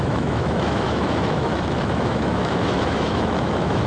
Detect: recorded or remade remade